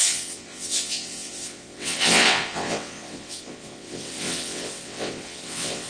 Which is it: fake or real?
fake